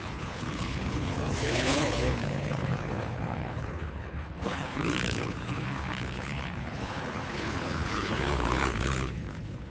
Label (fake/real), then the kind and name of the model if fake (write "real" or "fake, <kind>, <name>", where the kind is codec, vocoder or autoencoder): fake, codec, HILCodec